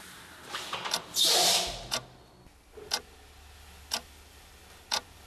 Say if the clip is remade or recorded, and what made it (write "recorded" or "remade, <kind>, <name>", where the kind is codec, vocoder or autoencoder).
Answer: recorded